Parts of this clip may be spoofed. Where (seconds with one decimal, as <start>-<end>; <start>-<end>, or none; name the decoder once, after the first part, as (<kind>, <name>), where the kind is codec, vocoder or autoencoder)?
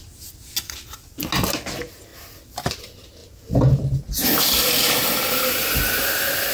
none